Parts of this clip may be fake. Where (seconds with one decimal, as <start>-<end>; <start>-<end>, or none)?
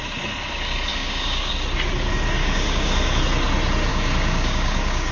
0.9-1.5; 2.4-3.2; 3.9-5.1